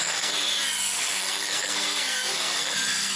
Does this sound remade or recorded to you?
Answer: remade